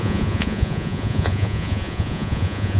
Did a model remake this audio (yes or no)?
yes